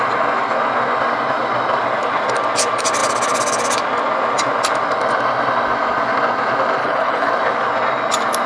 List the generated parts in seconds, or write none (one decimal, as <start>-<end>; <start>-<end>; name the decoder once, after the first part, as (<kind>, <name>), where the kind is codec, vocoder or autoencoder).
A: 6.8-7.3 (codec, HILCodec)